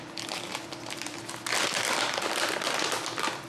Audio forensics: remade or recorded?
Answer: recorded